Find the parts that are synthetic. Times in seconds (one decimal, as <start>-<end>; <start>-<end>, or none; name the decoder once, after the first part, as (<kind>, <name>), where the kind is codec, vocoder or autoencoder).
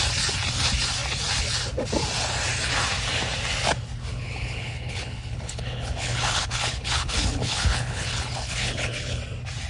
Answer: 4.1-9.2 (codec, HILCodec)